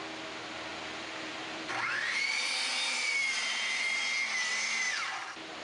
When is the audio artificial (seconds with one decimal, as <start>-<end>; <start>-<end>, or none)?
0.7-4.1